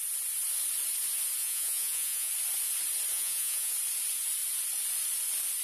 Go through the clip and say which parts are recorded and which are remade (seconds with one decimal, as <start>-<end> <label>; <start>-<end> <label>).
0.0-1.4 recorded; 1.4-2.3 remade; 2.3-3.1 recorded; 3.1-3.7 remade; 3.7-5.6 recorded